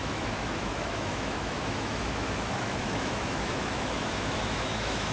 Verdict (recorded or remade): remade